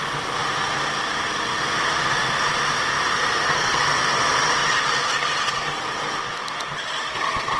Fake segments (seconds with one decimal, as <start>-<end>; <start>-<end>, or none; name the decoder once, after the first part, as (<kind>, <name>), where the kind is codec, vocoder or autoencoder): 3.2-3.8 (codec, SNAC)